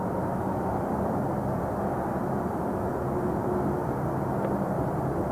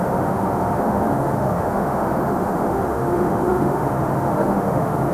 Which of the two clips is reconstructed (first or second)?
second